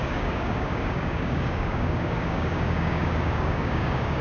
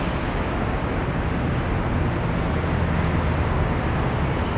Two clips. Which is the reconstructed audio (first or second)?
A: first